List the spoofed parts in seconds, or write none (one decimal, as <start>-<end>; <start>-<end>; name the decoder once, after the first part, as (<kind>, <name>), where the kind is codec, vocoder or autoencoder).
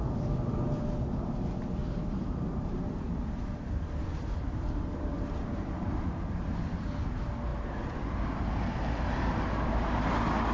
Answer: 1.8-6.6 (vocoder, BigVGAN v2)